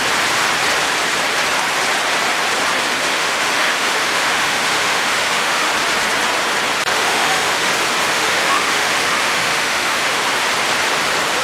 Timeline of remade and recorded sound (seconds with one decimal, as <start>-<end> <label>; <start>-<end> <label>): 0.0-3.1 recorded; 3.1-5.7 remade; 5.7-6.9 recorded; 6.9-7.7 remade; 7.7-8.1 recorded; 8.1-10.2 remade; 10.2-11.4 recorded